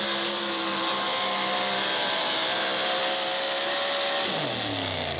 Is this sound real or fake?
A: real